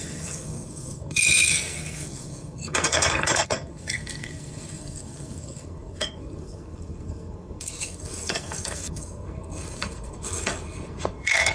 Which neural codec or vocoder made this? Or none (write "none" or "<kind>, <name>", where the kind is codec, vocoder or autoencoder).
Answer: codec, SNAC